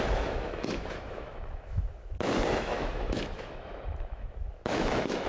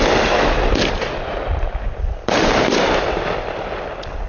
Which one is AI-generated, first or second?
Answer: first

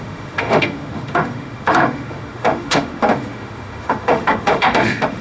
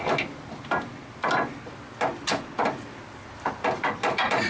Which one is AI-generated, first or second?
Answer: first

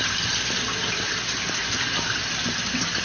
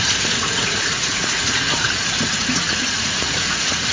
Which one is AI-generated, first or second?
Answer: second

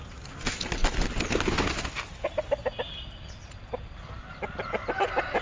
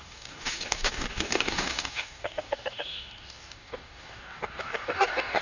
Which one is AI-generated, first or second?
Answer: second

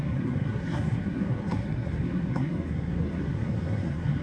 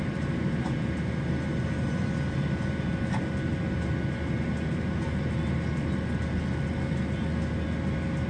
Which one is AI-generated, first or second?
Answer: first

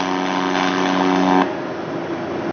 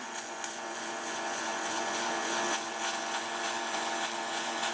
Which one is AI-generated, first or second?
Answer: second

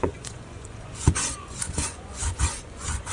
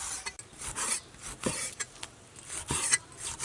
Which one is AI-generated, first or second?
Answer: first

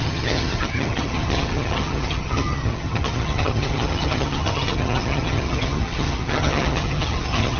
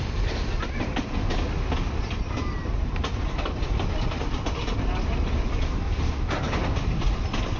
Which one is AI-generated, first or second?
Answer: first